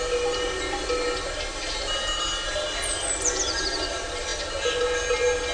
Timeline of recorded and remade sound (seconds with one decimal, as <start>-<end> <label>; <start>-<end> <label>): 0.0-5.5 recorded